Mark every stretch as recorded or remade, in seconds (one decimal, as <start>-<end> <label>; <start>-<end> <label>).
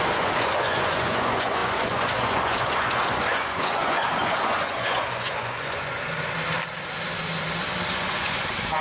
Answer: 0.0-6.1 remade; 6.1-7.9 recorded; 7.9-8.8 remade